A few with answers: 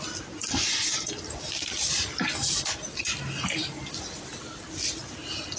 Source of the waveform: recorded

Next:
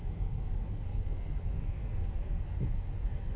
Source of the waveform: remade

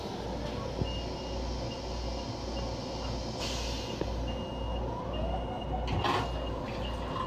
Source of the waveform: recorded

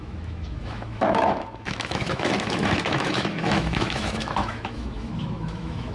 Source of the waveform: remade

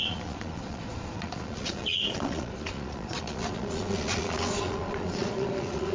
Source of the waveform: remade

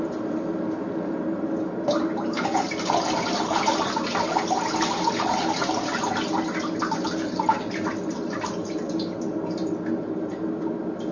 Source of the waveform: recorded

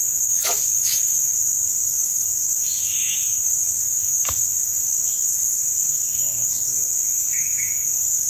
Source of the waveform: remade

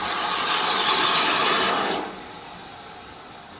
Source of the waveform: recorded